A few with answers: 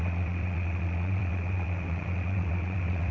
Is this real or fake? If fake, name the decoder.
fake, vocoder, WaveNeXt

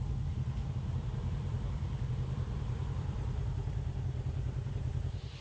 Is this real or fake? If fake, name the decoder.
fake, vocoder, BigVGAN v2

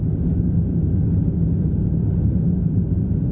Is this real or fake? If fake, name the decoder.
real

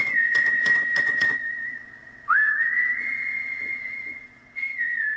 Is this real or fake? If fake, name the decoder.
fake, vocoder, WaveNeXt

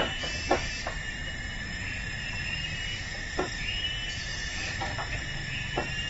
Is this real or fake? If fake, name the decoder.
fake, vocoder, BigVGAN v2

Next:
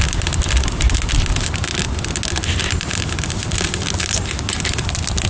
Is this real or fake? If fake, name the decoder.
real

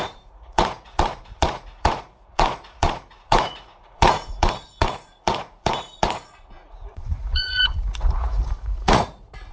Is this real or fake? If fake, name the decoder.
fake, vocoder, Vocos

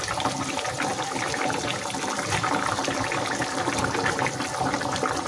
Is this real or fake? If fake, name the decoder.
real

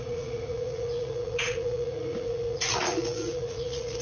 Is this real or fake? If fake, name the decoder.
fake, vocoder, Vocos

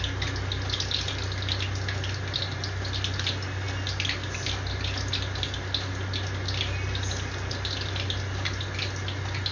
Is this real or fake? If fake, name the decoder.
real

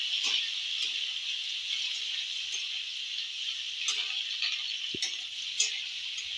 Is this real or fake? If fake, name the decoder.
real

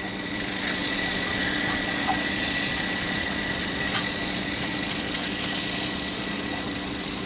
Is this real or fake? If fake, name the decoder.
fake, vocoder, Vocos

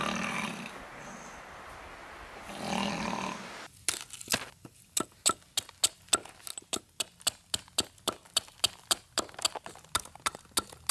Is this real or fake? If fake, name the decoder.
real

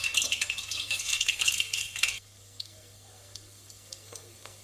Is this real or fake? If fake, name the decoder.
fake, codec, SNAC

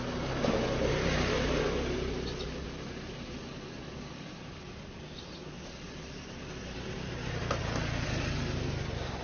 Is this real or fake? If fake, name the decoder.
real